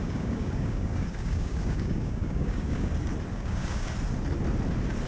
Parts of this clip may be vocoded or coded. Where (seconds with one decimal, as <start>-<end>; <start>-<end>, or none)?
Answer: 0.0-2.9; 3.3-3.9